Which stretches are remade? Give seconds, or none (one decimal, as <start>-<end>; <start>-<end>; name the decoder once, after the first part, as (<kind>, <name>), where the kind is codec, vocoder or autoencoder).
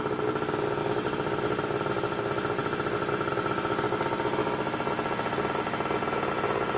none